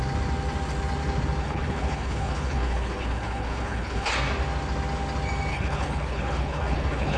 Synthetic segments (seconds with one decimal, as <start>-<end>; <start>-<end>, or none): 1.4-4.1; 5.5-7.2